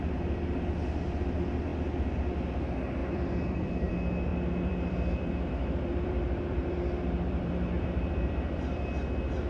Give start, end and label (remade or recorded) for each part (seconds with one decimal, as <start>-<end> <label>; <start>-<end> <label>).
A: 0.0-3.0 recorded; 3.0-3.9 remade; 3.9-4.3 recorded; 4.3-8.8 remade; 8.8-9.5 recorded